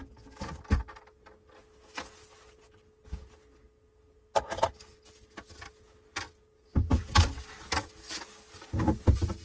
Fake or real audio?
real